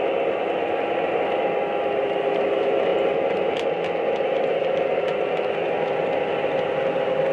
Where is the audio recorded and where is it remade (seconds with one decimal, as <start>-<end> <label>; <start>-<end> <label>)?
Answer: 0.0-7.3 recorded